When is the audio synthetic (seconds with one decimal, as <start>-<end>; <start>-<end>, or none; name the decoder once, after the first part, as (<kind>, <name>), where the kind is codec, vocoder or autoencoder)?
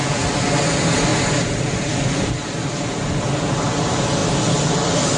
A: 1.1-2.8 (vocoder, BigVGAN v2)